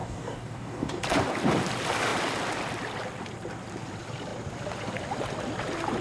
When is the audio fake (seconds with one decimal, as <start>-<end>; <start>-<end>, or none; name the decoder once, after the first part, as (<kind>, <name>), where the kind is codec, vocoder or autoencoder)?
0.0-1.0 (codec, DAC)